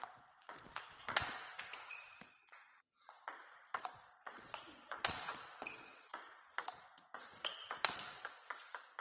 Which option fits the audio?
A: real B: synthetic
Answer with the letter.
B